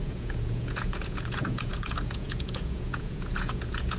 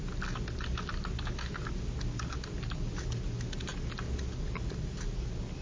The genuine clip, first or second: second